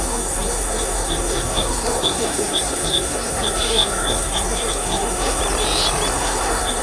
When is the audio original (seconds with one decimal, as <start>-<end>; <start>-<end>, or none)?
5.4-6.1